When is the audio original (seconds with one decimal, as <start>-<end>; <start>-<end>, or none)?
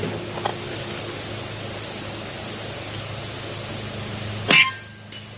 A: 0.0-5.4